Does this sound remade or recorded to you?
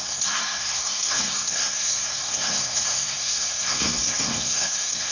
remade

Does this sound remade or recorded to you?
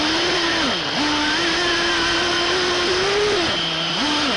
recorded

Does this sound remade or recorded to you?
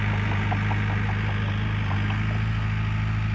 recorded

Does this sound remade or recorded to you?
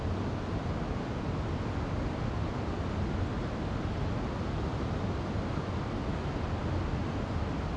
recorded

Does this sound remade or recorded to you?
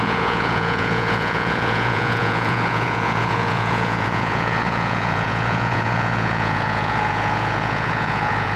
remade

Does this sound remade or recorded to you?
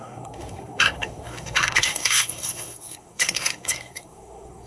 remade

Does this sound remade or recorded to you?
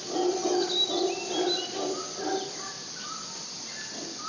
recorded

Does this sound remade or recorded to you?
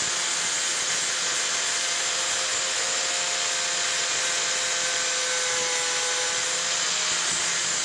recorded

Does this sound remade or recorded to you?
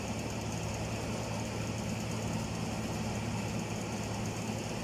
recorded